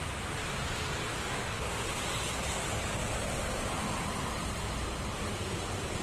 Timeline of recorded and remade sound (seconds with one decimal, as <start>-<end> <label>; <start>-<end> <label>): 0.0-1.1 recorded; 1.1-1.7 remade; 1.7-6.0 recorded